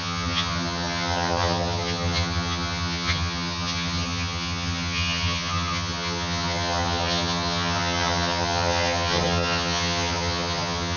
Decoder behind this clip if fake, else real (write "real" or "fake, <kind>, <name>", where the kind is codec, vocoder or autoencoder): fake, vocoder, HiFi-GAN